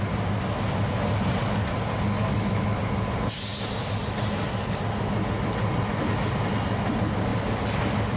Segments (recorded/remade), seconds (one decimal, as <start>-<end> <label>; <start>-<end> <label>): 0.0-2.2 recorded; 2.2-2.8 remade; 2.8-8.2 recorded